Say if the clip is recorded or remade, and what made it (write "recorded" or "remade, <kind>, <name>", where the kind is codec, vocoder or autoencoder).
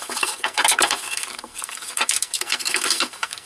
remade, codec, SNAC